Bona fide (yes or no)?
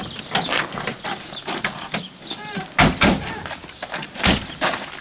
yes